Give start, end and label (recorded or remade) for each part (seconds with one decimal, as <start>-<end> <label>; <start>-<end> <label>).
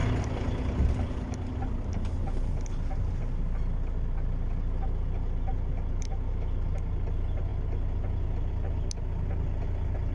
0.0-10.1 recorded